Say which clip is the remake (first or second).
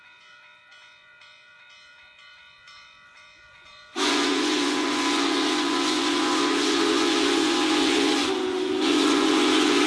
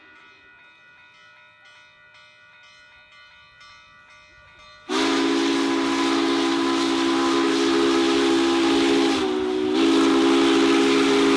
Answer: first